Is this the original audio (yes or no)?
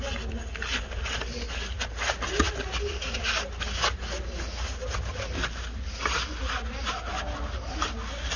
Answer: yes